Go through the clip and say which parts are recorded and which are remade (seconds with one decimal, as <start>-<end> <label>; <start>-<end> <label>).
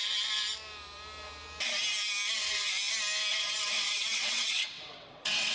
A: 0.0-3.3 recorded; 3.3-5.5 remade